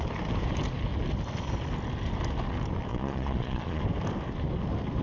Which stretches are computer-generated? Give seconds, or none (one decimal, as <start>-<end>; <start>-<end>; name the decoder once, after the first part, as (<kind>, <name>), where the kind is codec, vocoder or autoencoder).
2.9-3.8 (vocoder, Vocos)